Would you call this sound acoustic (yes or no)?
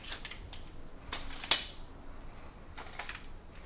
yes